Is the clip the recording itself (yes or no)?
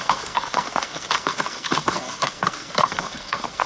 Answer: no